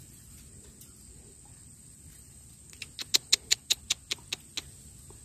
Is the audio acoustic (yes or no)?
yes